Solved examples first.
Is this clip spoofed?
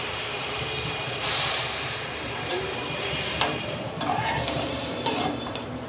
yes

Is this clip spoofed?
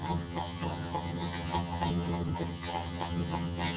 yes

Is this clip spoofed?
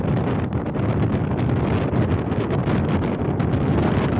no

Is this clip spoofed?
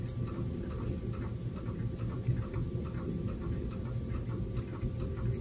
no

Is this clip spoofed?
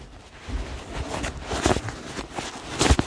no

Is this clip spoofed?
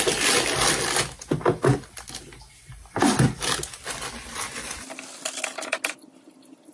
no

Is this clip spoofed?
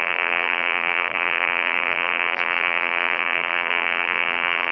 yes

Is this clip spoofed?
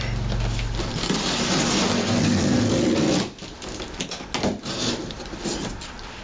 no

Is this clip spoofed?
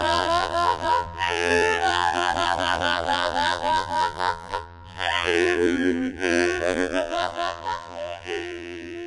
yes